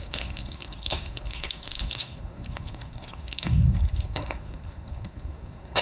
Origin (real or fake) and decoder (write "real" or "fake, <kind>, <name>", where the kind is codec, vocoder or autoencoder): fake, codec, SNAC